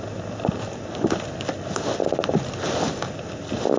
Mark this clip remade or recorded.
recorded